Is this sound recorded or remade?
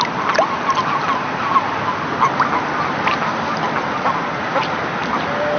recorded